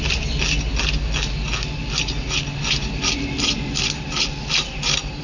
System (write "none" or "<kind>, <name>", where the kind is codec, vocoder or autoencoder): none